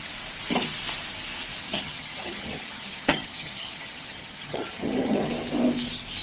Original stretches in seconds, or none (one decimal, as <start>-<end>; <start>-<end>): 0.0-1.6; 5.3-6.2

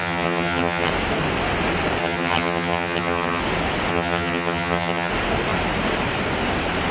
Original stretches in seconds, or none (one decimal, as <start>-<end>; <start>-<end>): 0.9-2.0; 3.4-3.9; 5.1-6.9

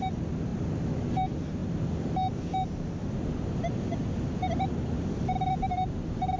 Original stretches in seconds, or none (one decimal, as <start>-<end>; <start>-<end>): 0.0-6.4

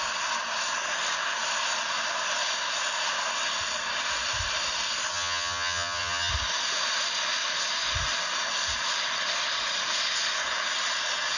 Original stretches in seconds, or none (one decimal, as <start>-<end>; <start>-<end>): 0.0-5.1; 6.3-11.4

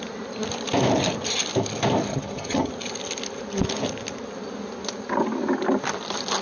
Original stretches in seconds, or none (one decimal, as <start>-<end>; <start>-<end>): 0.0-2.1; 2.7-6.4

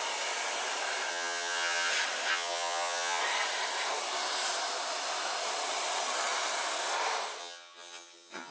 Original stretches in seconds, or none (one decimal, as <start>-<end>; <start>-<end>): 0.0-1.1; 1.9-2.3; 3.2-7.4

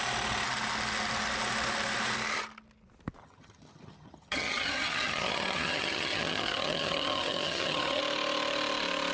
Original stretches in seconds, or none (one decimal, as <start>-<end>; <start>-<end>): 0.0-3.2; 8.0-9.1